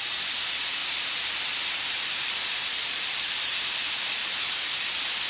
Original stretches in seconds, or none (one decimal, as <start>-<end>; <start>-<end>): 0.0-0.8; 3.7-4.2